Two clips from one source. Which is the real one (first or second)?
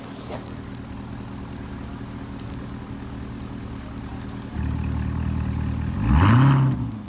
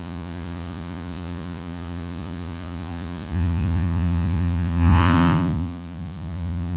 first